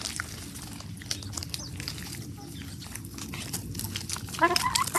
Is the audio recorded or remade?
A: recorded